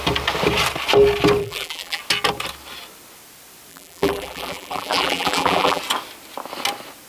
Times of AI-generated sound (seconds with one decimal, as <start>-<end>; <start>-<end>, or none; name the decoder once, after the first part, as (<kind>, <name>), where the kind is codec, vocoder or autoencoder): 1.4-2.0 (vocoder, BigVGAN v2); 3.7-5.8